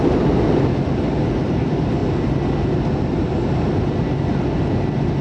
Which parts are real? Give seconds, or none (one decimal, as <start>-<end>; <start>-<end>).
0.0-5.2